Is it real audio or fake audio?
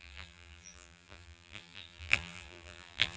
fake